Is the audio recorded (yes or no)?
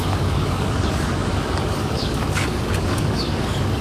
no